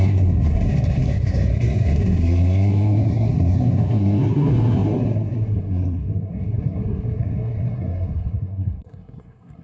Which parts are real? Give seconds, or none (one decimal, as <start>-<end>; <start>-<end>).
none

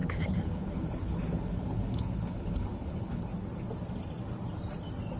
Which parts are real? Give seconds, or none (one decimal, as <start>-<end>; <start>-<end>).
3.3-5.2

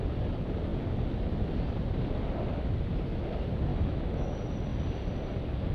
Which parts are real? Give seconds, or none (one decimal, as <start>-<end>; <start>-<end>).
0.0-3.7; 4.3-5.7

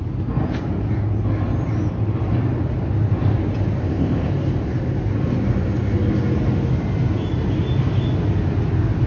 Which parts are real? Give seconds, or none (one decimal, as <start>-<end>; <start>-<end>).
0.0-3.8; 4.3-9.1

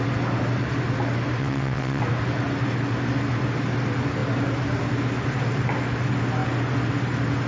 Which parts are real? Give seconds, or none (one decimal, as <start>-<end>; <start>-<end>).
0.0-1.4; 2.0-7.5

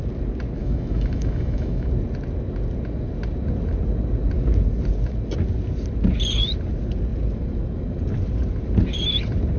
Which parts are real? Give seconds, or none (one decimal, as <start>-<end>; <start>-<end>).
0.0-0.6; 1.9-9.6